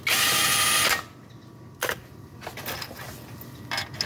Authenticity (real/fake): real